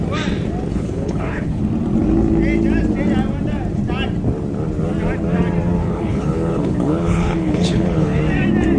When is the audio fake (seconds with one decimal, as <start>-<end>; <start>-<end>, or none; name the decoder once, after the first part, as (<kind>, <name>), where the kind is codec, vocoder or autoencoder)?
0.7-1.6 (codec, HILCodec); 5.8-8.2